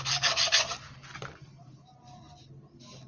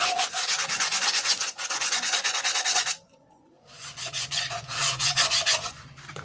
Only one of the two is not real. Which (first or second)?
second